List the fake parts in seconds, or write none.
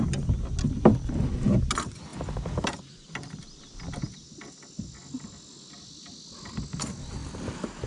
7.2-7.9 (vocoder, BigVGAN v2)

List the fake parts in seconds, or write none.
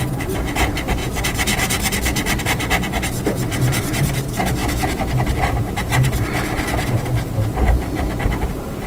0.0-1.0 (vocoder, BigVGAN v2); 2.4-8.9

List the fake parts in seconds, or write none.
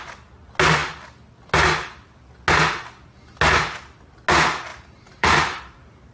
4.7-6.1 (vocoder, BigVGAN v2)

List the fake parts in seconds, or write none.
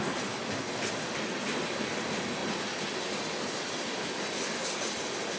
none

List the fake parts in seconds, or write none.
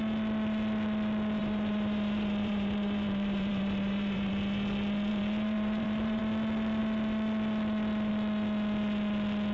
1.4-4.3 (vocoder, BigVGAN v2); 5.1-6.2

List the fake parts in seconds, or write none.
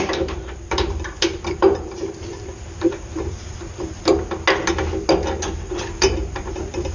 0.0-4.1 (vocoder, BigVGAN v2); 5.5-6.9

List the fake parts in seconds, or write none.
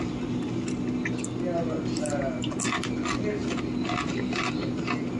3.4-4.5 (vocoder, BigVGAN v2)